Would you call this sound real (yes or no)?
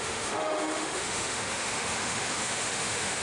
no